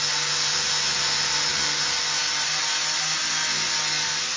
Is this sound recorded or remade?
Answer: recorded